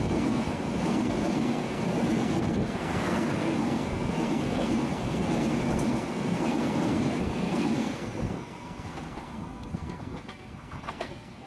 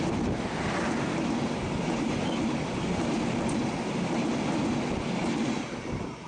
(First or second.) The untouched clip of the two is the second